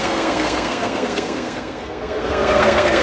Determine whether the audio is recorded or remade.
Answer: remade